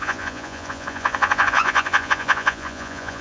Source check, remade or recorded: remade